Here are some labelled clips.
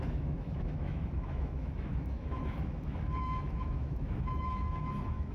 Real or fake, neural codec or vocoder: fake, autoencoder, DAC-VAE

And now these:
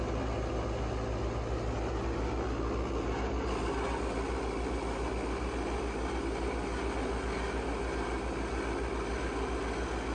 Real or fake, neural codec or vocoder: real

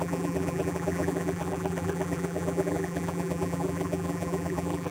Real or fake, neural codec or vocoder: fake, vocoder, BigVGAN v2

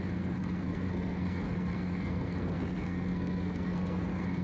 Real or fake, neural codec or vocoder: fake, codec, SNAC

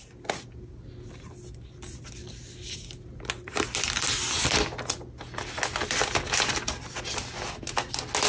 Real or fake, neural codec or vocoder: real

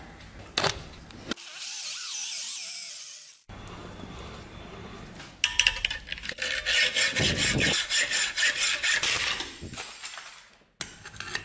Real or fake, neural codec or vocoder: real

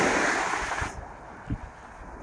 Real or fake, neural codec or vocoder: real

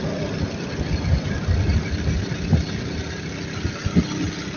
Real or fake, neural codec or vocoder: real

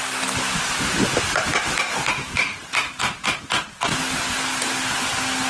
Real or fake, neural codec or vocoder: real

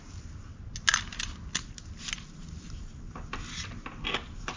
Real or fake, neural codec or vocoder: real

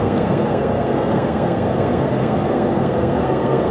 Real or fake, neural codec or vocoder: fake, codec, SNAC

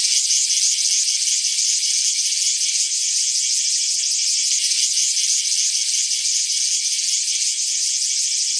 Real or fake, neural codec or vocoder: real